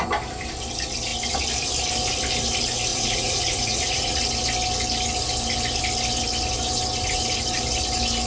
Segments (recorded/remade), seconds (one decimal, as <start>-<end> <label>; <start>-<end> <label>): 0.0-2.9 recorded; 2.9-4.2 remade; 4.2-8.3 recorded